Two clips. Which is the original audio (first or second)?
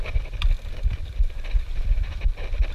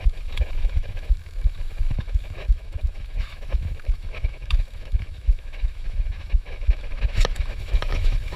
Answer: first